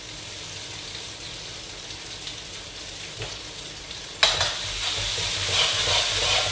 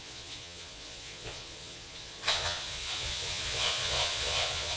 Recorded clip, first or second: first